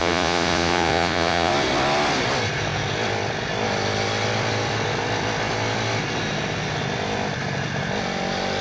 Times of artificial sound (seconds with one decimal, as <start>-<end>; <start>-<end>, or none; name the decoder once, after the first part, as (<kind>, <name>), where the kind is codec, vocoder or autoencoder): 0.0-1.5 (vocoder, Vocos)